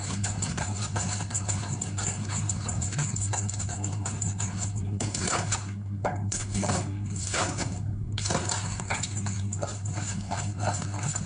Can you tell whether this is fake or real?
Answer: fake